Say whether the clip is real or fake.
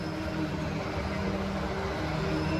real